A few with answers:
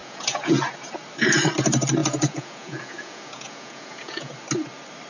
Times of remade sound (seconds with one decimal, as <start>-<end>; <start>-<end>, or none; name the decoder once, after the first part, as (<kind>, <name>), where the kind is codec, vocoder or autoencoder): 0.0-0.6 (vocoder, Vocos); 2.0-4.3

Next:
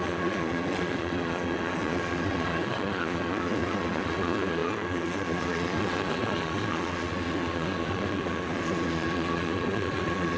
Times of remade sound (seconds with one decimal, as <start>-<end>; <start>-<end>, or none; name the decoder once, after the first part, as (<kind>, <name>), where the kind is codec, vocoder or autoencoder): 0.0-10.4 (vocoder, Vocos)

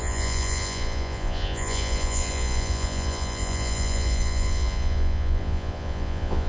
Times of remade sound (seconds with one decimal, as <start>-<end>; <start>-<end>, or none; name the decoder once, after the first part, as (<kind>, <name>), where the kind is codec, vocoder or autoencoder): 0.0-6.5 (vocoder, Vocos)

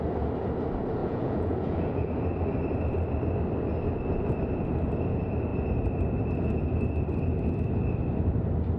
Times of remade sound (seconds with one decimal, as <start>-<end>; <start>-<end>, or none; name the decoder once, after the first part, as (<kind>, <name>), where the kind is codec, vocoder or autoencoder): 1.0-2.1 (vocoder, Vocos)